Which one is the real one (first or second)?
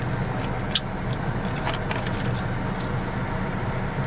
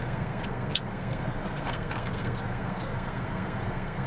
first